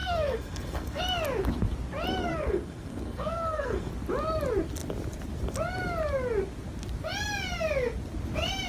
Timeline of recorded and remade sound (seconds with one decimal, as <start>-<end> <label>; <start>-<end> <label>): 0.0-1.0 remade; 1.0-2.3 recorded; 2.3-3.9 remade; 3.9-8.7 recorded